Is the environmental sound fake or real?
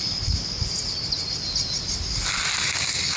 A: real